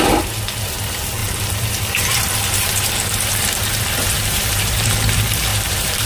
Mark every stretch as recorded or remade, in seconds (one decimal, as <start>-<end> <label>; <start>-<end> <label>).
0.0-1.2 recorded; 1.2-4.9 remade; 4.9-5.5 recorded; 5.5-6.1 remade